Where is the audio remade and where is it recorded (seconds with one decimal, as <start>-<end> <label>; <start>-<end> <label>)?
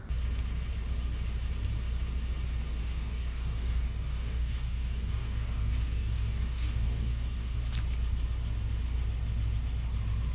0.0-2.8 recorded; 2.8-7.6 remade; 7.6-10.3 recorded